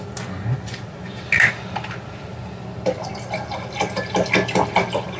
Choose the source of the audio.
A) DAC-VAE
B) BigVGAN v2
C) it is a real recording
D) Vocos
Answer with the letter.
C